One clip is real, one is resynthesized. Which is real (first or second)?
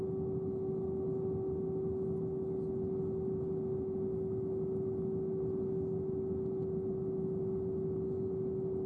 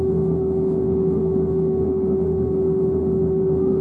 first